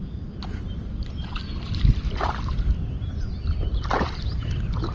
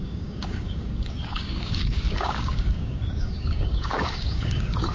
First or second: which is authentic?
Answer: first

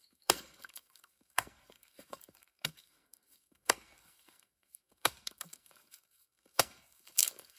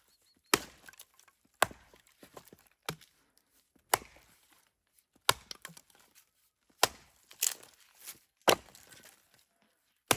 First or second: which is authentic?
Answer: second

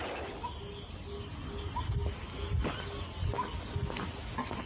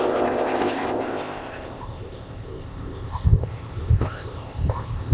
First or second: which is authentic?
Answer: first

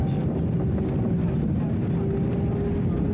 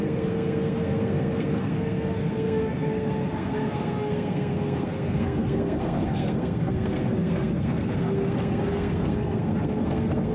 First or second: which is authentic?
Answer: first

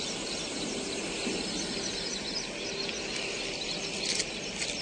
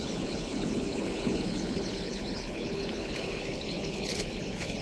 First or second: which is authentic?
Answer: first